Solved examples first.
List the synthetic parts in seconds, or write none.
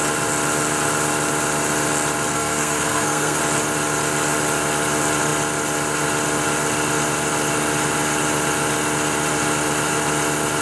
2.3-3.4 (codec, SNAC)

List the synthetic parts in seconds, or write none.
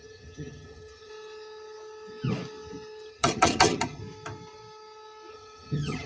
0.0-1.1 (vocoder, HiFi-GAN); 3.1-4.0; 5.3-6.1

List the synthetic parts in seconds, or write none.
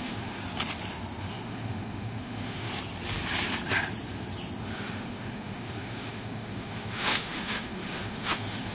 0.0-0.4 (autoencoder, DAC-VAE); 1.2-2.7; 4.6-8.7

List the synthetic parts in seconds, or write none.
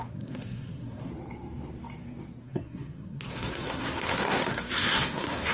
0.0-1.1 (codec, SNAC); 2.4-5.5